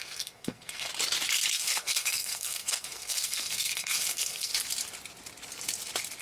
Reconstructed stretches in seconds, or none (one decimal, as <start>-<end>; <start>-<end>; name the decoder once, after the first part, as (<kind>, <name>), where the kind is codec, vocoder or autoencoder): 0.0-0.9 (codec, SNAC); 1.5-4.5